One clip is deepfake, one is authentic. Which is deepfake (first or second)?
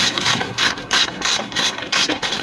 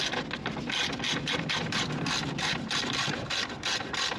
first